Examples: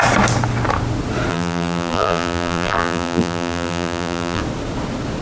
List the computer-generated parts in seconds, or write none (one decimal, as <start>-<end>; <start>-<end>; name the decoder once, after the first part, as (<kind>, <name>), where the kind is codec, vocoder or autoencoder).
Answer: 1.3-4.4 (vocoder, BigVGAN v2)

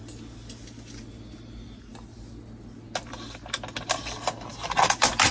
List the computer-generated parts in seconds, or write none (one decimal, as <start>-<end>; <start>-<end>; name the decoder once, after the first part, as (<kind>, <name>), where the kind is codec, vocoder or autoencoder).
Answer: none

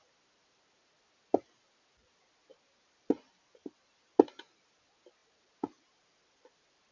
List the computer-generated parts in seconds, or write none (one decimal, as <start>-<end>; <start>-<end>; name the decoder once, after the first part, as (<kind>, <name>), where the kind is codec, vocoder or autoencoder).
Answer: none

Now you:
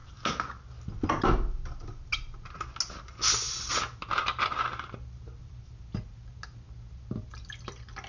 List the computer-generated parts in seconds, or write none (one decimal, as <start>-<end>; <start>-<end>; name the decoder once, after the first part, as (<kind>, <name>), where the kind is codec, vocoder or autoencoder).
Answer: none